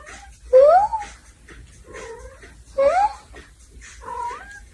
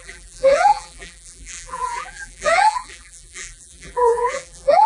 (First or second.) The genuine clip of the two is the first